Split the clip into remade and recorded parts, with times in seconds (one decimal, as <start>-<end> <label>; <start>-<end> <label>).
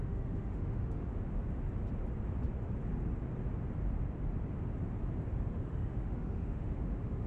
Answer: 0.0-1.1 remade; 1.1-5.5 recorded; 5.5-7.3 remade